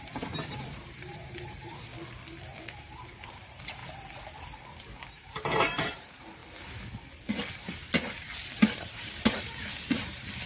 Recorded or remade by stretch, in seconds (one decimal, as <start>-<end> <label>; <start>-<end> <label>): 0.0-1.9 remade; 1.9-2.7 recorded; 2.7-3.8 remade; 3.8-5.1 recorded; 5.1-6.4 remade; 6.4-8.2 recorded; 8.2-10.5 remade